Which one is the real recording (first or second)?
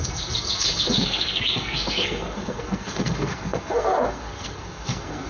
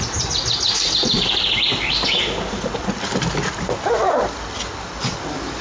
second